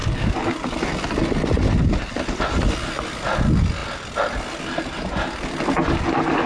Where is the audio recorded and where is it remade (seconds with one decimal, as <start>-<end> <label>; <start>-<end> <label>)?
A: 0.0-6.5 recorded